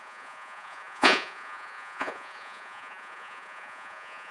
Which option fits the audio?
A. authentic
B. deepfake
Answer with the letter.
B